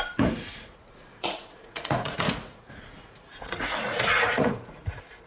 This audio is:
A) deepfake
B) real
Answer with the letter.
A